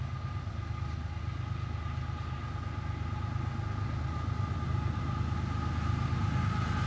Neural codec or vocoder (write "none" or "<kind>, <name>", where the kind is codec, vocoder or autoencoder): none